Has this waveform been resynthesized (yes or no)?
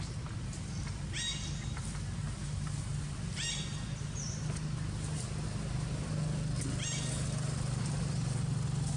no